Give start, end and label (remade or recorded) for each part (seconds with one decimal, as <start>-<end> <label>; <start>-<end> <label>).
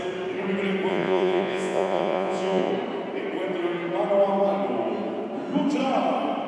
0.0-0.9 recorded; 0.9-2.7 remade; 2.7-6.5 recorded